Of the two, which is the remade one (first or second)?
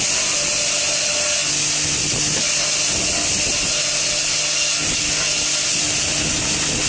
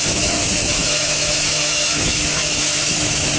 second